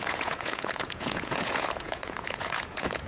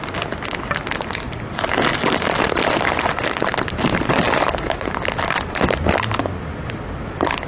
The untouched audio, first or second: second